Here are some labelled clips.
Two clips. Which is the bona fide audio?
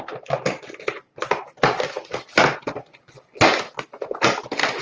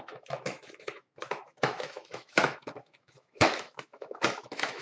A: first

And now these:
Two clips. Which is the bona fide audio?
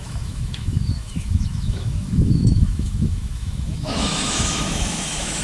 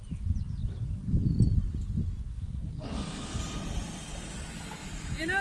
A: second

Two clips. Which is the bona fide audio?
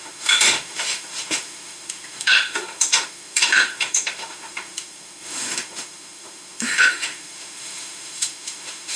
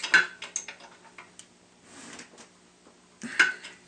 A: second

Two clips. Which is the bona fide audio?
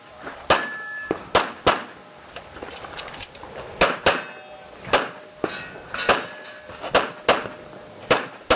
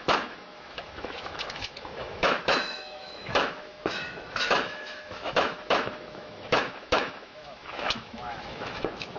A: first